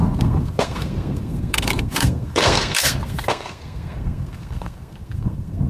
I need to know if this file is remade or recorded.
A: remade